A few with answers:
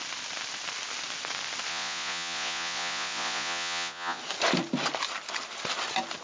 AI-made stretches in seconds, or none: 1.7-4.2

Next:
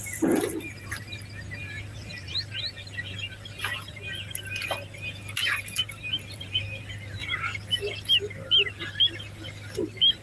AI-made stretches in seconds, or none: none

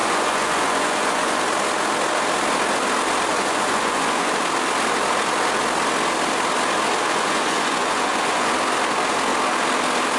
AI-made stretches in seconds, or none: 0.0-1.4; 3.3-4.3; 7.1-8.5

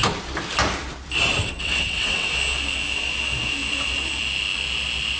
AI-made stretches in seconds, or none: 1.4-2.3